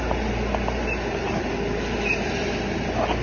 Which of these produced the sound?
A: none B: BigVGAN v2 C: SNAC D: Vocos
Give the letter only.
A